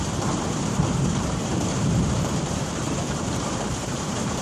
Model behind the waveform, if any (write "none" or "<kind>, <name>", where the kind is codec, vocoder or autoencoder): vocoder, BigVGAN v2